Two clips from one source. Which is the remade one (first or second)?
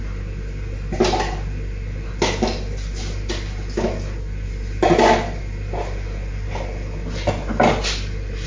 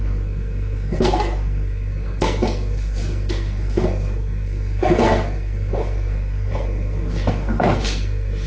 second